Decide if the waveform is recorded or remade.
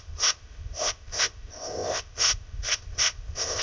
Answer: remade